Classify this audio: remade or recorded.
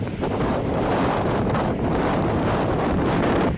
remade